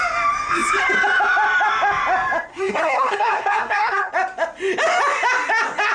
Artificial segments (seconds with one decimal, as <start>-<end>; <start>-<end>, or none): 2.5-4.1